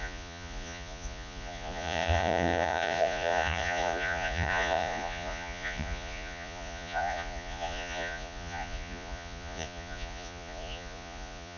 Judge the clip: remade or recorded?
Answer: remade